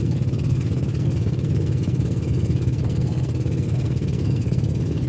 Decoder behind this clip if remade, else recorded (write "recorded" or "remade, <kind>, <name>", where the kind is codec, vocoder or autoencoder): remade, codec, SNAC